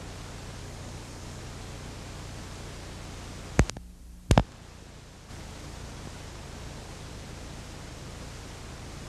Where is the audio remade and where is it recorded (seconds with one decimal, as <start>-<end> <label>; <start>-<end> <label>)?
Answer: 0.0-0.6 recorded; 0.6-1.4 remade; 1.4-9.1 recorded